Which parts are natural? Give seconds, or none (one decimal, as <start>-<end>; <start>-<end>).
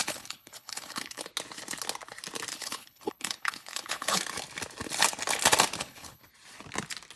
1.3-2.5; 4.2-5.8; 6.3-7.2